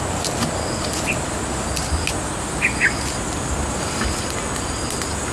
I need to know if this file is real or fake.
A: real